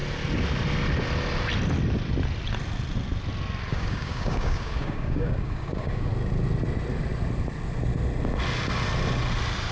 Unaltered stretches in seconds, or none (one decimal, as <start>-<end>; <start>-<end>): 0.0-3.7; 6.1-9.7